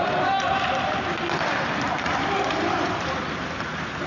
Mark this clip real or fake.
real